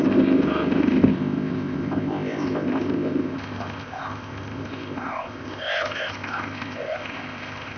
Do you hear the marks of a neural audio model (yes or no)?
yes